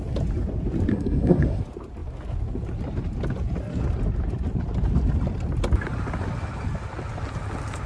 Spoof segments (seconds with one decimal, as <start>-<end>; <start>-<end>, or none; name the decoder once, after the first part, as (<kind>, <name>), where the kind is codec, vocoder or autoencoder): 0.9-1.6 (codec, SNAC)